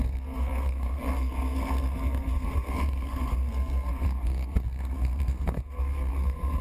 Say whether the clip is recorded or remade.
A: remade